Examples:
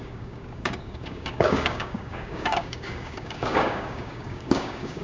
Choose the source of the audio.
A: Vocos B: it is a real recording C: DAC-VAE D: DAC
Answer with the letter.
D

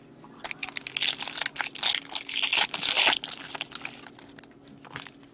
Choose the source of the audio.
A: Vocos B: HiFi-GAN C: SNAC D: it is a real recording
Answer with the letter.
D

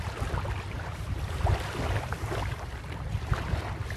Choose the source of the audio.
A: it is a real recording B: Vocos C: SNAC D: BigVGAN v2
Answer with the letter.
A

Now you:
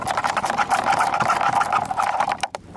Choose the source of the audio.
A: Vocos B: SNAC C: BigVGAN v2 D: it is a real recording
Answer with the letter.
C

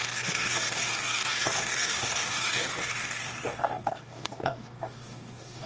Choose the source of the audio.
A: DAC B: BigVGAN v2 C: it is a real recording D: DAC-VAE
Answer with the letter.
A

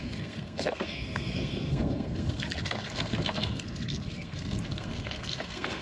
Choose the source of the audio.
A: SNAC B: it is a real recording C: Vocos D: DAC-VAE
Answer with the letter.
A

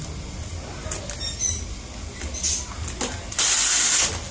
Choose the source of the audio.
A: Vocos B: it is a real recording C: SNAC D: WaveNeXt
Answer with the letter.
B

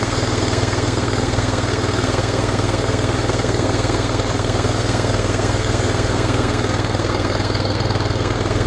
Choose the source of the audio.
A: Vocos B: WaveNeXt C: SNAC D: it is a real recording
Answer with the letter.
C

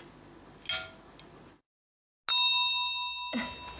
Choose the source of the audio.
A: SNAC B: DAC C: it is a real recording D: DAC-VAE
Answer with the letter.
C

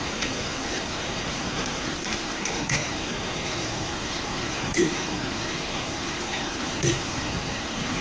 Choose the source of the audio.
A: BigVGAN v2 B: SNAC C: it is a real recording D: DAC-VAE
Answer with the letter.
B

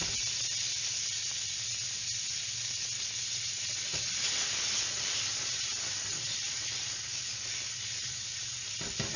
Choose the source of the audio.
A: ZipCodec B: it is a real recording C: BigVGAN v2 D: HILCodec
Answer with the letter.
B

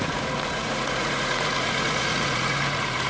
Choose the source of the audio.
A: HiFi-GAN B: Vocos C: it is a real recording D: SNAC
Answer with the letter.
B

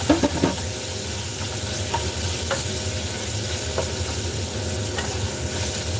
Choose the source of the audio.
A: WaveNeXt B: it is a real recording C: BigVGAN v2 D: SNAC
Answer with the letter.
B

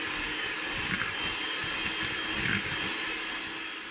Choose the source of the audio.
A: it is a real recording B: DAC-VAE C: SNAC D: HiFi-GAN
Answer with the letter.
A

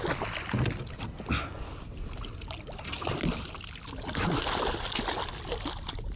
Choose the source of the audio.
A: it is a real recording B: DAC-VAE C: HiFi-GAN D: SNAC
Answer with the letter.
A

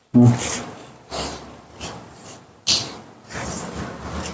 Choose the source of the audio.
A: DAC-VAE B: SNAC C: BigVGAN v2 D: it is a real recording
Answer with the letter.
D